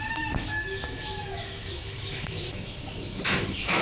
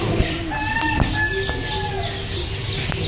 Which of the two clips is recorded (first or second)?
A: second